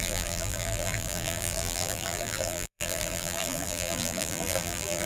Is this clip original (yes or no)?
no